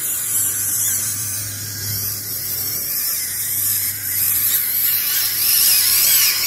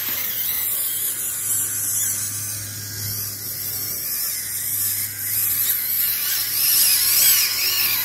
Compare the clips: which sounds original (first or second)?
second